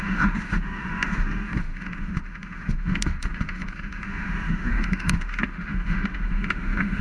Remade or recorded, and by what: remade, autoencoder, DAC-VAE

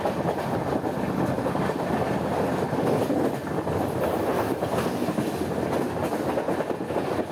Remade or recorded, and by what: recorded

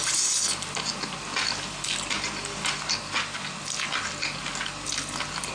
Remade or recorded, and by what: recorded